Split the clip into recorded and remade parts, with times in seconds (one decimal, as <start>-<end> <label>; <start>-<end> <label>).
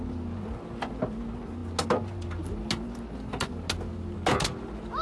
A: 0.0-5.0 recorded